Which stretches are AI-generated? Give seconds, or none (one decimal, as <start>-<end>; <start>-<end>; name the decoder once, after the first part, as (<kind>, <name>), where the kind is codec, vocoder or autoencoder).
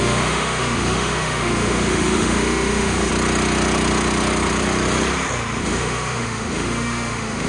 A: 0.0-3.1 (autoencoder, DAC-VAE); 5.6-7.5